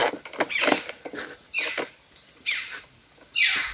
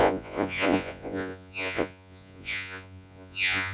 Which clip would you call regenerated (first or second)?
second